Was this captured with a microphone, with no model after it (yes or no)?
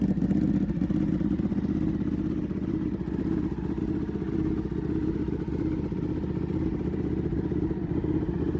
no